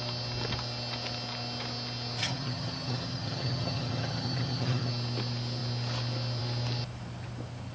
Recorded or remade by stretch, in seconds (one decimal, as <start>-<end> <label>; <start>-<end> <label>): 0.0-2.2 recorded; 2.2-4.9 remade; 4.9-7.7 recorded

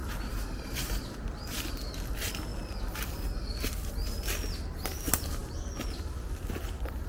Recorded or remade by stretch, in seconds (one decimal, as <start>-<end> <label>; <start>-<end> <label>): 0.0-1.9 remade; 1.9-7.1 recorded

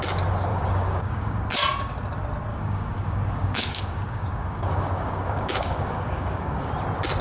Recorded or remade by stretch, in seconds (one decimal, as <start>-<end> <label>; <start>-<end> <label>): 0.0-0.5 recorded; 0.5-1.4 remade; 1.4-2.5 recorded; 2.5-6.7 remade; 6.7-7.2 recorded

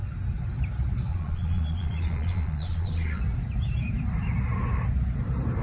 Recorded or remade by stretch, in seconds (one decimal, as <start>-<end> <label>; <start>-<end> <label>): 0.0-1.1 recorded; 1.1-3.2 remade; 3.2-5.6 recorded

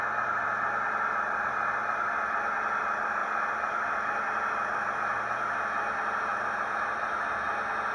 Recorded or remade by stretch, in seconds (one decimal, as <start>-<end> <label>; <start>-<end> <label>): 0.0-3.2 recorded; 3.2-4.1 remade; 4.1-6.3 recorded; 6.3-7.1 remade; 7.1-7.9 recorded

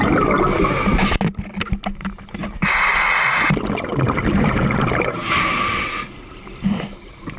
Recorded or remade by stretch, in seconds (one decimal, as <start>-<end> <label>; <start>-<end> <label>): 0.0-7.4 recorded

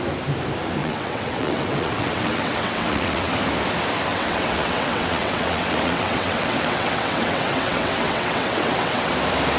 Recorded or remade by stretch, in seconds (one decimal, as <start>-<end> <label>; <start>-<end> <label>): 0.0-0.8 recorded; 0.8-3.3 remade; 3.3-4.1 recorded; 4.1-9.1 remade; 9.1-9.6 recorded

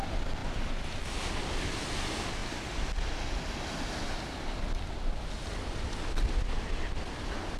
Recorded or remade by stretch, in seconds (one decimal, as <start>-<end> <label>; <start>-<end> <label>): 0.0-7.6 recorded